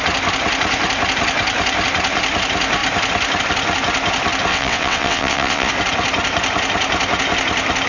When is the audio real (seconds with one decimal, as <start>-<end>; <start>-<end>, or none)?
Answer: 0.0-4.5; 5.7-7.9